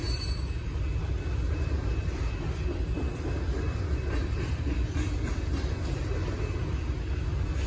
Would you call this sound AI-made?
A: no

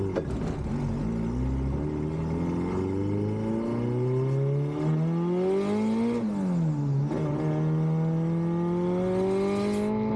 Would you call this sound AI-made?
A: no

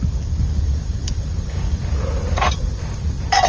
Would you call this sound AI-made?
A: no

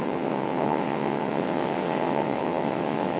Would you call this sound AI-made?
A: yes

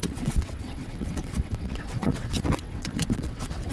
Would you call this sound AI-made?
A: yes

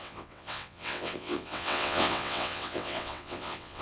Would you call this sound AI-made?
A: yes